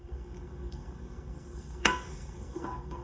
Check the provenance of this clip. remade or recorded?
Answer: remade